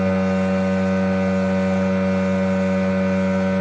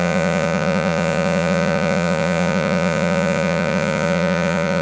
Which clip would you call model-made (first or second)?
second